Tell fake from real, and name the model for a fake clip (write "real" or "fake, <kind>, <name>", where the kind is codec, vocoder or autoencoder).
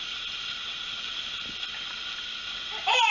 real